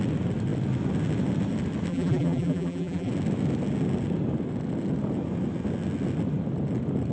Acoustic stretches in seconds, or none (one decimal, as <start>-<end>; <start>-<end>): 0.0-1.9; 3.1-7.1